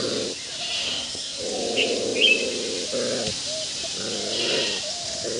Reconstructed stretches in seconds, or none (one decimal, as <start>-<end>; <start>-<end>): 0.8-1.4